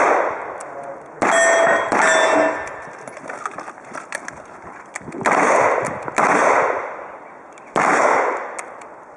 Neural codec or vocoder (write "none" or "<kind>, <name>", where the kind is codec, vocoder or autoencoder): none